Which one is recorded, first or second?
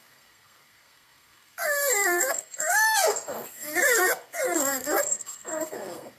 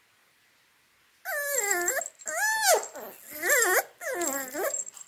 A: second